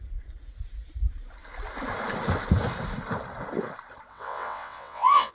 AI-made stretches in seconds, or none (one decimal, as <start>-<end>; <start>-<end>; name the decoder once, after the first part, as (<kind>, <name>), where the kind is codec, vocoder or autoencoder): 4.1-5.3 (vocoder, WaveNeXt)